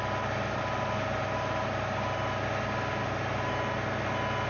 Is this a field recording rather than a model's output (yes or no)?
yes